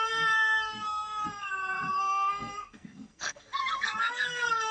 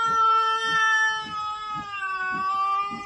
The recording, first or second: second